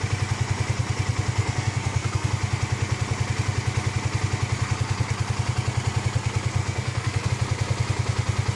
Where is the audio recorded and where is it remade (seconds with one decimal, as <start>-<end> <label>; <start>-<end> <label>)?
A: 0.0-1.4 recorded; 1.4-2.3 remade; 2.3-6.6 recorded; 6.6-7.3 remade; 7.3-8.6 recorded